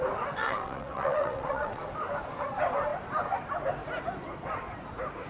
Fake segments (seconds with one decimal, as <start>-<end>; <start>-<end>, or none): 0.4-1.8